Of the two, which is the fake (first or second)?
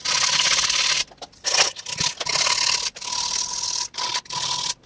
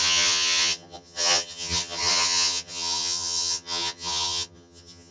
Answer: second